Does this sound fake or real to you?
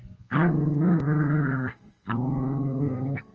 fake